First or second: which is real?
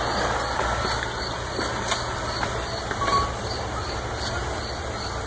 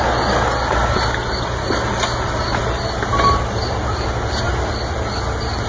second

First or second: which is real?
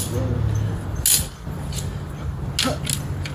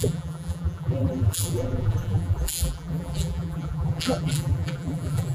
first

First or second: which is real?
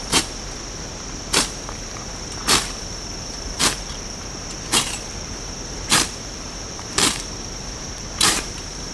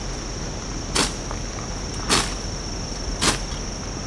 second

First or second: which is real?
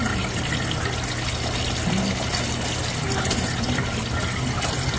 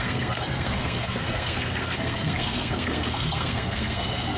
first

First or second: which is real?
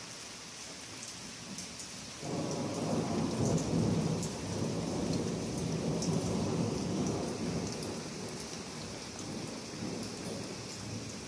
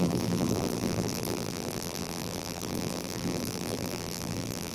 first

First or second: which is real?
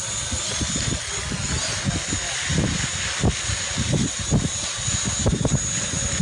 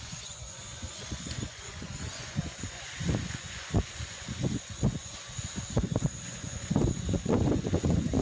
first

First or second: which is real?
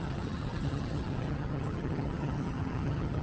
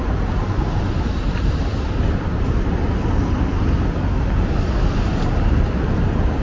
second